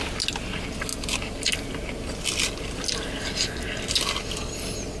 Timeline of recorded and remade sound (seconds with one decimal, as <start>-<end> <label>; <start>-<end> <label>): 0.0-5.0 recorded